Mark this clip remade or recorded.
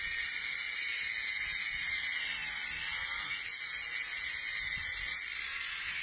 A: recorded